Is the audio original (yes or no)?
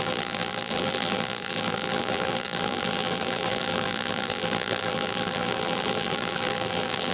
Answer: no